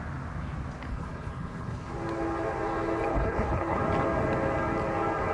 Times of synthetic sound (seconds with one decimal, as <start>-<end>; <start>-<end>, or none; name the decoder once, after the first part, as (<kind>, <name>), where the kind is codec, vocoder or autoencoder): 0.9-1.9 (codec, HILCodec); 3.1-3.8